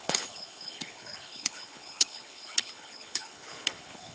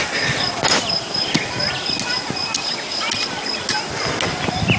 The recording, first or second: second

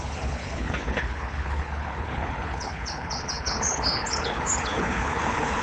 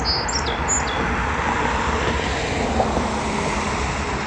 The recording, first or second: second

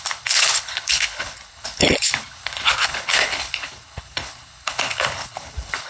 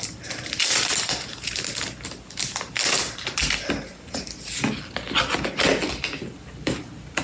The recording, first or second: second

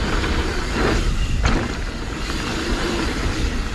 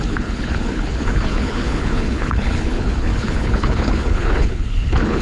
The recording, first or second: first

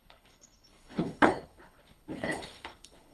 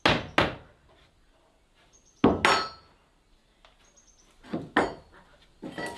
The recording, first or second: second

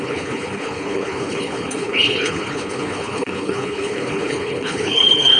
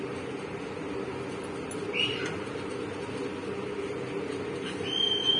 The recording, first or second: second